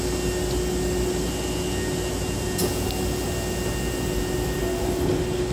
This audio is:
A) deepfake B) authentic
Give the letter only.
B